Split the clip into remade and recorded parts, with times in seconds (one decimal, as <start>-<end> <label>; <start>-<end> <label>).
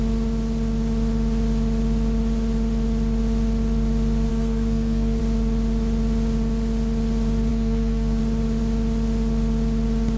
0.0-4.3 recorded; 4.3-5.2 remade; 5.2-7.5 recorded; 7.5-8.2 remade; 8.2-10.2 recorded